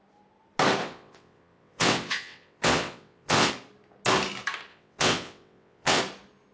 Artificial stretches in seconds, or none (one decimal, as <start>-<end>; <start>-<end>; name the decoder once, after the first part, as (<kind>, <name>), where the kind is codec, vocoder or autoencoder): 0.8-3.5 (vocoder, WaveNeXt); 4.7-6.0